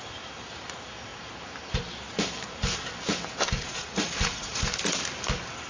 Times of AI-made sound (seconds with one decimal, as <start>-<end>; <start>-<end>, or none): 3.6-4.6